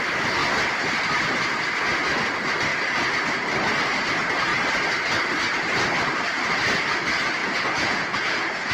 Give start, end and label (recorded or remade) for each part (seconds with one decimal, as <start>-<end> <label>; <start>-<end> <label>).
0.0-7.4 recorded; 7.4-8.7 remade